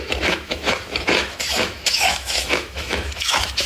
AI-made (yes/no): yes